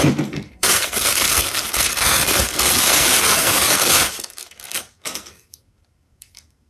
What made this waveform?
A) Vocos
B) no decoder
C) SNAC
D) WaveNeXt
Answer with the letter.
C